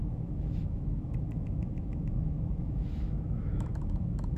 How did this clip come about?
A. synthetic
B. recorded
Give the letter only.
A